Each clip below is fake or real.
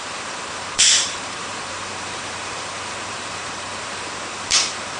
fake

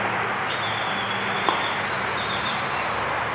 real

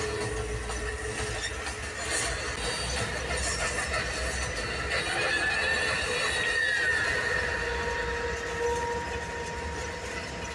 real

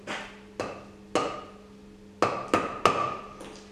real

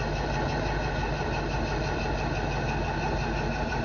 real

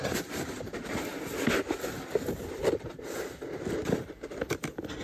real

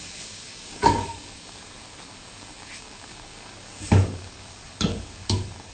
fake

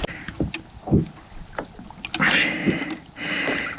real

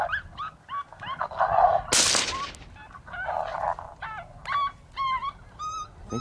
real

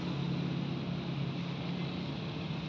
real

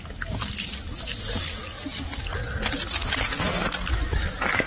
real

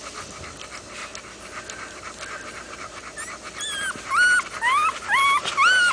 real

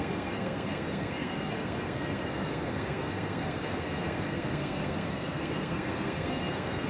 fake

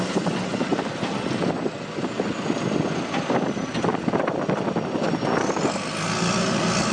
real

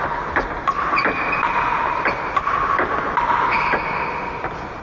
real